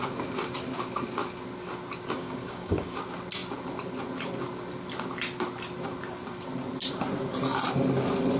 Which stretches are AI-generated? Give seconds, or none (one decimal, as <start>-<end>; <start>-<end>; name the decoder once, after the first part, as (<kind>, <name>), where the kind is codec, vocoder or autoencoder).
2.2-3.0 (codec, DAC)